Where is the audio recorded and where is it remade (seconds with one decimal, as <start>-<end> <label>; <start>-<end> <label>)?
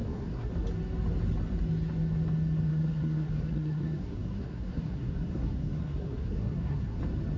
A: 0.0-0.5 remade; 0.5-2.7 recorded; 2.7-7.0 remade; 7.0-7.4 recorded